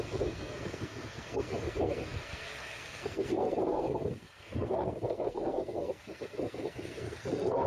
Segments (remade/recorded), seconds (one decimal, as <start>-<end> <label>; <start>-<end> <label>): 0.0-7.7 remade